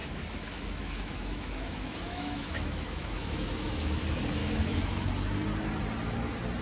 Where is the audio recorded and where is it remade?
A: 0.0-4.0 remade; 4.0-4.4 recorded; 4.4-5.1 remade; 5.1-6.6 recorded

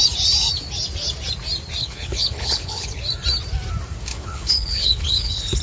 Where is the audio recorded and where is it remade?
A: 0.0-1.8 recorded; 1.8-3.0 remade; 3.0-4.1 recorded; 4.1-5.6 remade

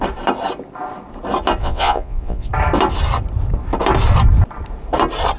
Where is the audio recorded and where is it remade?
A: 0.0-1.6 recorded; 1.6-2.5 remade; 2.5-5.4 recorded